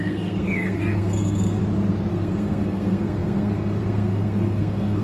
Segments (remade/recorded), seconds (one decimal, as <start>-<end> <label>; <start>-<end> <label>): 0.0-1.6 remade; 1.6-2.1 recorded; 2.1-5.0 remade